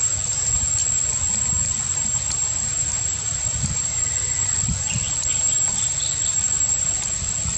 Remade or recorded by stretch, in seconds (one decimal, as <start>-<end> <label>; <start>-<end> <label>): 0.0-1.9 recorded; 1.9-4.0 remade; 4.0-7.6 recorded